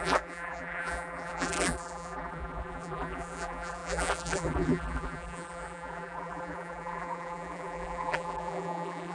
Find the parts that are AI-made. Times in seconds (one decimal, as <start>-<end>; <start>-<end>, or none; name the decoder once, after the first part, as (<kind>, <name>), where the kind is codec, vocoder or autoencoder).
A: 0.0-9.1 (vocoder, BigVGAN v2)